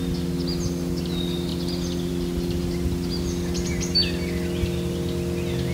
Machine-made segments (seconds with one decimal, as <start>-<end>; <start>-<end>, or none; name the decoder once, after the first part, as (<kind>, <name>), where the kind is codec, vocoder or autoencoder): none